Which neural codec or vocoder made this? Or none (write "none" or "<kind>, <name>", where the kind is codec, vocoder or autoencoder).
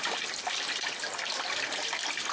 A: none